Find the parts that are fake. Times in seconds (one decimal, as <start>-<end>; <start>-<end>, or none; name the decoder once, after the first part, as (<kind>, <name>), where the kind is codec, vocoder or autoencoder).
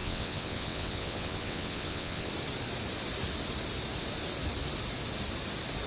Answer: 0.0-2.3 (vocoder, WaveNeXt)